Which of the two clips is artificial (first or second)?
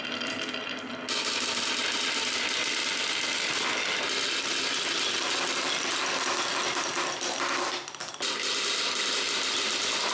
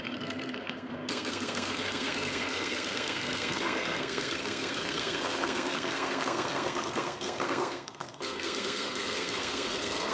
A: second